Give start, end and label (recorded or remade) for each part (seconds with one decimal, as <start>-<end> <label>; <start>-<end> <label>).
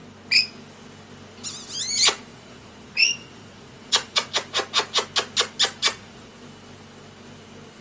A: 0.0-2.3 recorded; 2.3-4.3 remade; 4.3-5.8 recorded; 5.8-6.3 remade; 6.3-7.8 recorded